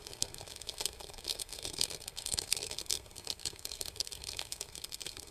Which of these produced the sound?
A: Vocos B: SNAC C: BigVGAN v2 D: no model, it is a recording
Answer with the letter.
B